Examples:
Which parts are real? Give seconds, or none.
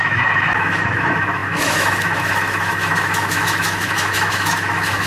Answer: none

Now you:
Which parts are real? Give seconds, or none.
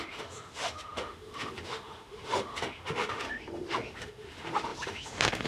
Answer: none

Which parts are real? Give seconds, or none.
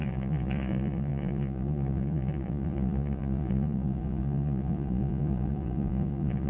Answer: none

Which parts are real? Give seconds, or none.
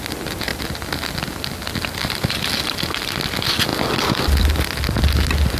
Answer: 0.0-5.6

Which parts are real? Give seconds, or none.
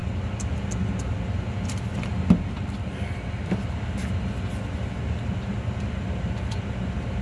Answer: 0.0-7.2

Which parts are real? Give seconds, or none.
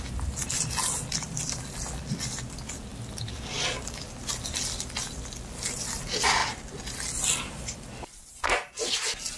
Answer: 0.0-1.1; 1.6-6.4; 8.1-9.4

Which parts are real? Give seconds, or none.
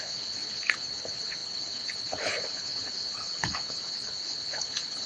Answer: none